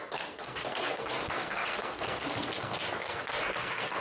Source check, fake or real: fake